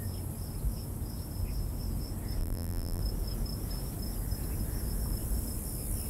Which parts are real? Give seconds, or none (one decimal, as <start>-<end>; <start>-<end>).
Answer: 0.0-2.4; 3.0-6.1